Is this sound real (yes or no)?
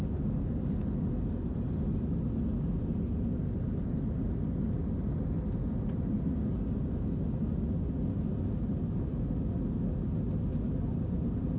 yes